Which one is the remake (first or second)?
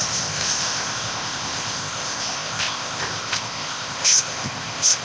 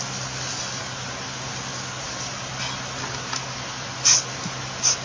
first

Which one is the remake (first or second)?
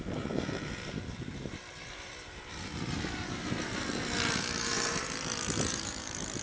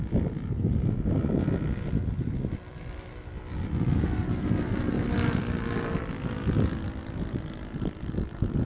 first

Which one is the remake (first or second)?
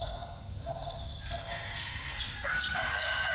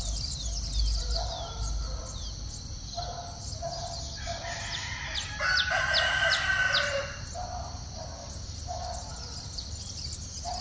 first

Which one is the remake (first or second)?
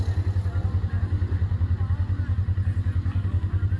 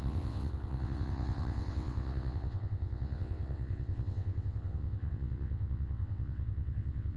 second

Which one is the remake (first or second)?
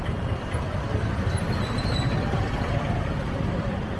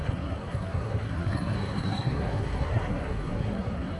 second